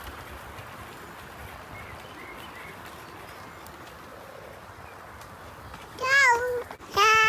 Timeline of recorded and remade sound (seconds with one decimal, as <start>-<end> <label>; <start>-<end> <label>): 0.0-7.3 recorded

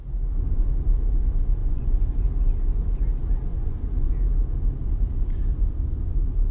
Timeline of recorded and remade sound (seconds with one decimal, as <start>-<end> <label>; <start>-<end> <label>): 0.0-1.6 recorded; 1.6-2.1 remade; 2.1-3.5 recorded; 3.5-4.1 remade; 4.1-6.5 recorded

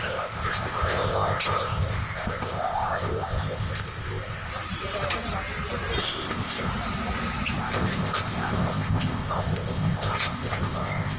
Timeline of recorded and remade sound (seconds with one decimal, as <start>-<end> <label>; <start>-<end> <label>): 0.0-4.5 remade; 4.5-6.0 recorded; 6.0-6.7 remade; 6.7-7.6 recorded; 7.6-11.2 remade

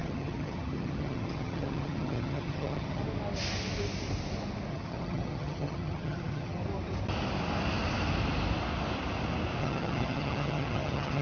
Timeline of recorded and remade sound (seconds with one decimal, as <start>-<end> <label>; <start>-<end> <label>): 0.0-3.0 remade; 3.0-4.7 recorded; 4.7-6.6 remade; 6.6-9.6 recorded; 9.6-11.2 remade

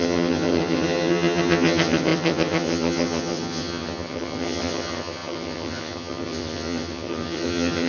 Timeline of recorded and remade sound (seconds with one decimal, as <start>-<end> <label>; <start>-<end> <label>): 0.0-7.9 remade